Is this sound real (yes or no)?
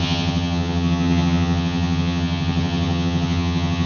no